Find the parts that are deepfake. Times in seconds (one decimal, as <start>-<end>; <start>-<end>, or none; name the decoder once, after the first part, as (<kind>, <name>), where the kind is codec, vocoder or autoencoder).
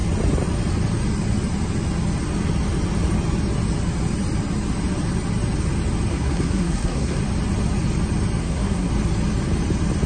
6.1-7.2 (codec, SNAC); 8.4-8.9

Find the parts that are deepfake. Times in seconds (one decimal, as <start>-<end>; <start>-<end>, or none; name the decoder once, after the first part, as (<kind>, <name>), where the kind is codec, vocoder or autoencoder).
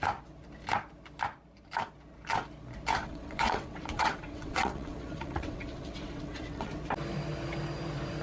3.0-6.7 (vocoder, WaveNeXt)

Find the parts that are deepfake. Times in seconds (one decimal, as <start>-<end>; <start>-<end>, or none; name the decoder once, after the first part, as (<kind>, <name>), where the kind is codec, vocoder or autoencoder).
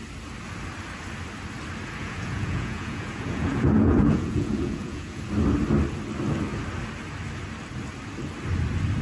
2.0-5.2 (vocoder, Vocos)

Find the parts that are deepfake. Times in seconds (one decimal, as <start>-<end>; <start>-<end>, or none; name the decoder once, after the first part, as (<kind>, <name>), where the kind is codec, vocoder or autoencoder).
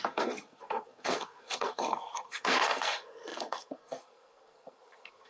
0.0-5.3 (codec, SNAC)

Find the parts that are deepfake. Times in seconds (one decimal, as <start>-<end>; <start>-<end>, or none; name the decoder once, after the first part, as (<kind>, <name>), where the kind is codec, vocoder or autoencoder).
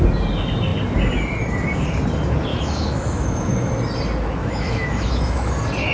2.5-3.7 (autoencoder, DAC-VAE); 4.4-5.5